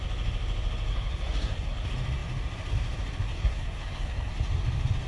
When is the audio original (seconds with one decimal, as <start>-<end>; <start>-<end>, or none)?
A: 0.0-0.9; 1.7-3.3; 4.3-5.1

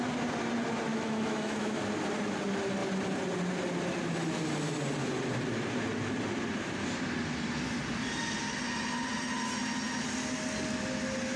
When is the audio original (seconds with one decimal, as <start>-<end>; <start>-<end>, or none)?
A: 0.0-0.9; 1.8-11.4

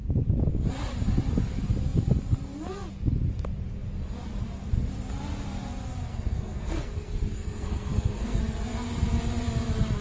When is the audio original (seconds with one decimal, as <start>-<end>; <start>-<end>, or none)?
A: 0.0-6.1; 8.4-10.0

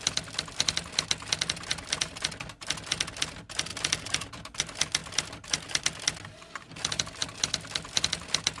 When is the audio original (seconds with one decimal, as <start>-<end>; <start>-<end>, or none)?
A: 0.0-3.7; 4.6-5.0; 5.8-8.6